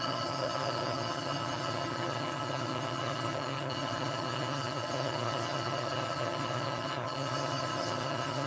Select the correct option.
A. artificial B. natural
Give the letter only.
A